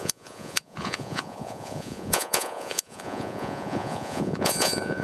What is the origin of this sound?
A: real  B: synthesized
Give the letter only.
B